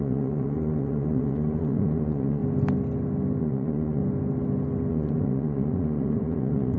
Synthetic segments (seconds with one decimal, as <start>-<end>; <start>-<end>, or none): 0.0-2.4; 3.4-4.0; 4.9-6.8